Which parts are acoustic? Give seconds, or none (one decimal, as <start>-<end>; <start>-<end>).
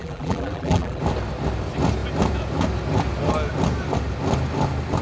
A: 1.0-5.0